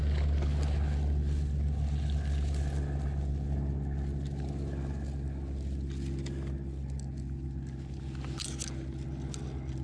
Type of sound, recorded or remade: recorded